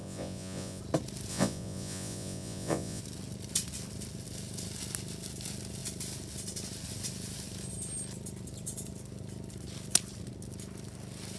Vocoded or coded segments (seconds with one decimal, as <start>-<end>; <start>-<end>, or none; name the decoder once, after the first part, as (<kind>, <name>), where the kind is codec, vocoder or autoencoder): 0.0-0.8 (vocoder, Vocos); 1.3-3.0